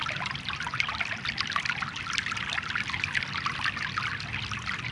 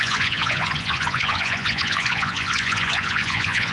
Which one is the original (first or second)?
first